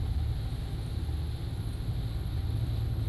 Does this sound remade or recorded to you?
recorded